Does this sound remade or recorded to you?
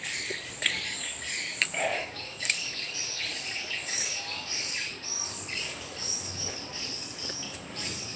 remade